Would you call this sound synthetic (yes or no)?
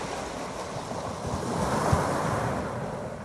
no